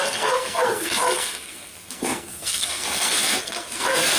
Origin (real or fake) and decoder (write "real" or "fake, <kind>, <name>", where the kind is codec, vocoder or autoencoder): fake, codec, SNAC